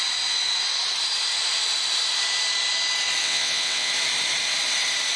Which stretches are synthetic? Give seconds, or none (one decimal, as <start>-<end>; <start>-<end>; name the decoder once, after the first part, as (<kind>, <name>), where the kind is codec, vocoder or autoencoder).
3.2-3.9 (vocoder, WaveNeXt)

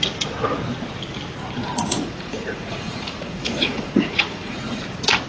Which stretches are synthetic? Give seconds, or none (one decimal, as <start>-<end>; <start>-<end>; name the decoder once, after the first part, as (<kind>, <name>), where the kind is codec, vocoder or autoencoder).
1.6-4.8 (vocoder, Vocos)